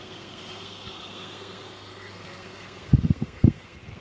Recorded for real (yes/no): no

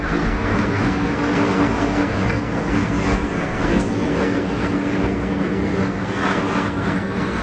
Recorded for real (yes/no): no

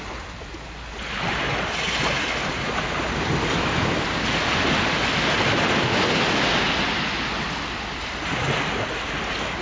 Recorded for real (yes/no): yes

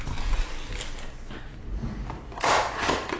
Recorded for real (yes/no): yes